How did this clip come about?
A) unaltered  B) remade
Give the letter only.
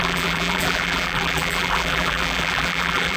B